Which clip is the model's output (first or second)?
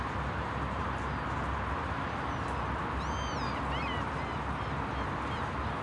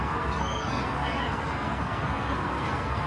second